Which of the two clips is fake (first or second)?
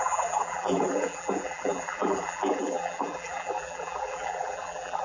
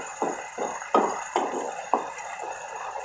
first